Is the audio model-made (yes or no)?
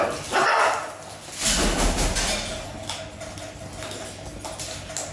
no